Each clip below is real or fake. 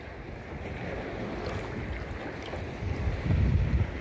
real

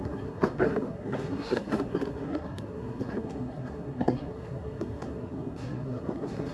fake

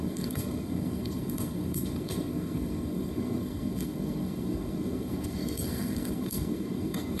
fake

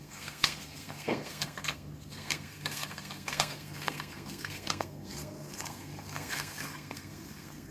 fake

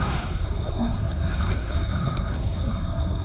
fake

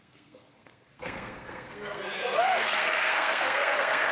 fake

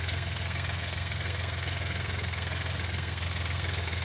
fake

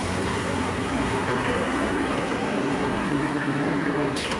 fake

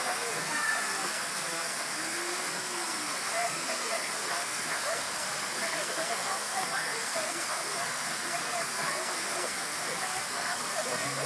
fake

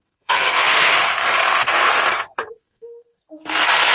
fake